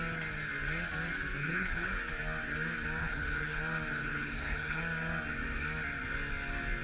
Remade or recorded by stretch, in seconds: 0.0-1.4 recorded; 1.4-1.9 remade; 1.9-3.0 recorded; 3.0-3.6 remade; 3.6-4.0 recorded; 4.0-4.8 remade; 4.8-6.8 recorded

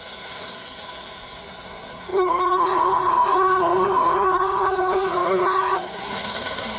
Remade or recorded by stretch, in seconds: 0.0-6.8 remade

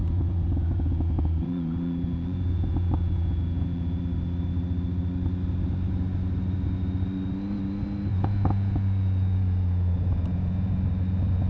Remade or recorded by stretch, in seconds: 0.0-4.0 remade; 4.0-8.1 recorded; 8.1-10.8 remade; 10.8-11.5 recorded

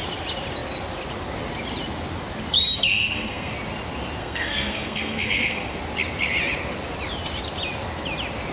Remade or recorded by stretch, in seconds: 0.0-2.9 recorded; 2.9-3.5 remade; 3.5-4.2 recorded; 4.2-5.7 remade; 5.7-8.5 recorded

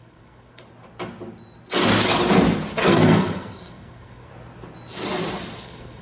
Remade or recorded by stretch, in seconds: 0.0-0.6 remade; 0.6-2.8 recorded; 2.8-4.3 remade; 4.3-5.6 recorded; 5.6-6.0 remade

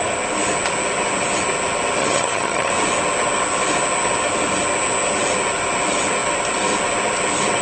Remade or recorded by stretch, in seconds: 0.0-2.0 recorded; 2.0-2.7 remade; 2.7-7.6 recorded